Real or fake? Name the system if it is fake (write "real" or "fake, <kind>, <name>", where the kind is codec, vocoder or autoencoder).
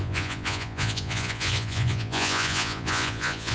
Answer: fake, vocoder, Vocos